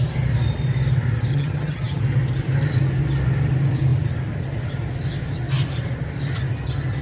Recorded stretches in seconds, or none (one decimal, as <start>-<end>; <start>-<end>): 0.0-1.3; 2.0-7.0